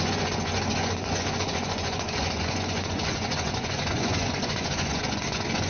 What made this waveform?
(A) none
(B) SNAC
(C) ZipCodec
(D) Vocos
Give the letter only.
D